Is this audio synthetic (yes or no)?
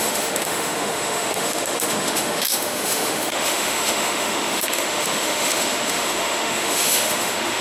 yes